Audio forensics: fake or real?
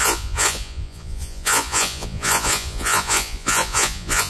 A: fake